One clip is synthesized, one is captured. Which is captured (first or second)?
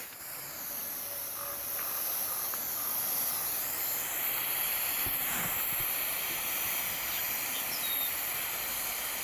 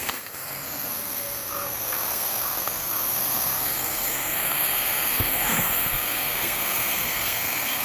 first